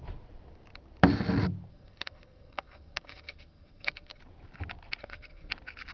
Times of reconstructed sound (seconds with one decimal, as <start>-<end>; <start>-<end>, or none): 1.7-4.2; 5.0-5.5